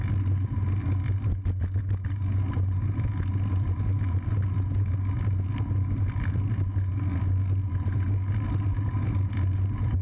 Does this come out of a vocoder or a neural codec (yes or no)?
no